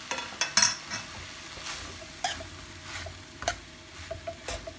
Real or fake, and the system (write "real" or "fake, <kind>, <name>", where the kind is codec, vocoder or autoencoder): real